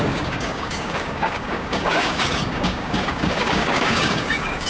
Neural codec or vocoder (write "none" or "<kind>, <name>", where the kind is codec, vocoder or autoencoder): codec, DAC